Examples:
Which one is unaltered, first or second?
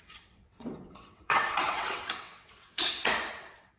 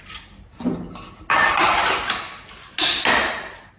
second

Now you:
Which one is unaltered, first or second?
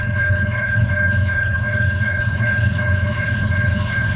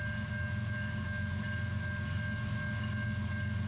second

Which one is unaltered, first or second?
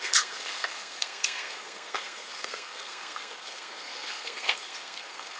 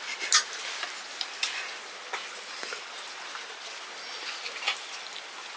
second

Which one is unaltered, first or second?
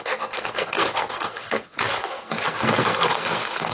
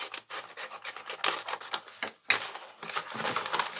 second